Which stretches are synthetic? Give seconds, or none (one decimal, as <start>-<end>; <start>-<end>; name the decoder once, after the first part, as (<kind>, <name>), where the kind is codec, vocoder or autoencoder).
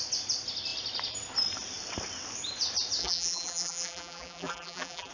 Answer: 3.0-5.1 (vocoder, BigVGAN v2)